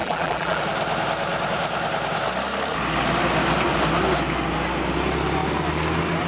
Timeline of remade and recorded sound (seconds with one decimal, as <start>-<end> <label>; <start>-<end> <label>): 0.0-0.6 remade; 0.6-6.3 recorded